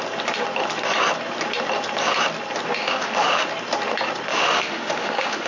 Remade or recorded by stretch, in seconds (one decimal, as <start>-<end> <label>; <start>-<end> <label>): 0.0-2.8 recorded; 2.8-3.4 remade; 3.4-4.3 recorded; 4.3-5.5 remade